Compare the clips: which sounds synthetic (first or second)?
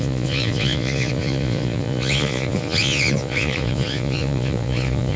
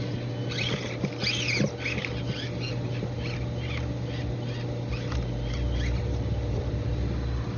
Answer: first